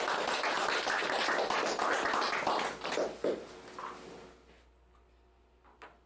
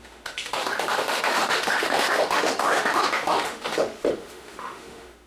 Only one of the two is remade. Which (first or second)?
second